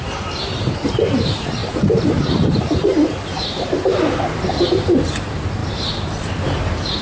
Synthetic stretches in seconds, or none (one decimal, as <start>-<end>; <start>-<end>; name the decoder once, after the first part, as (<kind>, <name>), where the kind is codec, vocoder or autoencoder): 0.0-7.0 (vocoder, BigVGAN v2)